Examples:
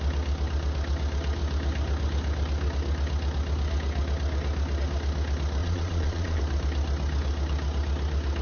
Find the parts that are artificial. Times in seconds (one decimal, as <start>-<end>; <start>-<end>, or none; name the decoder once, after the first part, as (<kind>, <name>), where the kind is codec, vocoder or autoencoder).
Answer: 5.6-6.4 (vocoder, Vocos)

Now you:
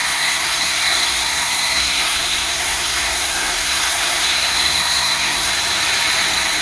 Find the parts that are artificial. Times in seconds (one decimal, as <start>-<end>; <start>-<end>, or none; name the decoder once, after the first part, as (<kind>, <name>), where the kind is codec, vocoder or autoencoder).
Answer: 0.0-5.5 (codec, SNAC)

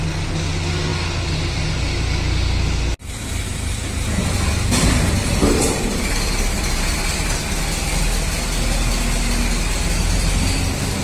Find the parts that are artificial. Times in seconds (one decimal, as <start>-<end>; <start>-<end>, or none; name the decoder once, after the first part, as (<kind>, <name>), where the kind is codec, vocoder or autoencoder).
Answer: none